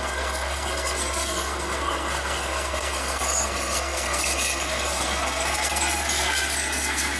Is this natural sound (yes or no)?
no